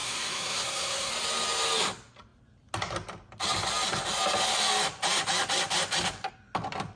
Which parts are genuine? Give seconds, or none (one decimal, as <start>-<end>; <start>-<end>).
1.1-7.0